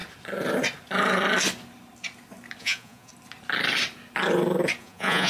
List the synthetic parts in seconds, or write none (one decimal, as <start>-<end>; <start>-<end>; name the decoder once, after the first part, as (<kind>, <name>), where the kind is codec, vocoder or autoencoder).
2.6-3.1 (vocoder, Vocos); 4.8-5.3

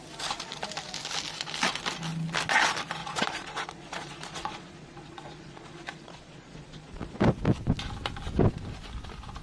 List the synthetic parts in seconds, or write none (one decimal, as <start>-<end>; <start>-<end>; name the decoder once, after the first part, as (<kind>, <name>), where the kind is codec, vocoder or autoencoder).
3.0-7.2 (vocoder, Vocos)